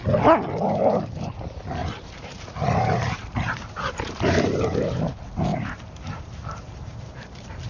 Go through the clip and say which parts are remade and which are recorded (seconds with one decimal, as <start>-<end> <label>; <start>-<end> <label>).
0.0-1.8 recorded; 1.8-4.6 remade; 4.6-5.5 recorded; 5.5-7.7 remade